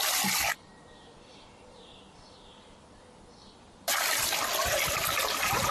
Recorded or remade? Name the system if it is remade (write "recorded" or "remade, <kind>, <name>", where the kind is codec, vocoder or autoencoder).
remade, vocoder, BigVGAN v2